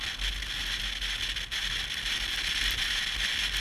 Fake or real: real